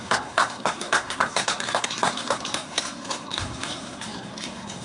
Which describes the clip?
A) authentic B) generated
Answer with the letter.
B